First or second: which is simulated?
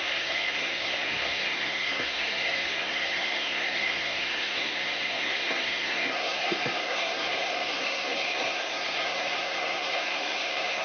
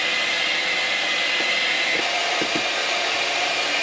first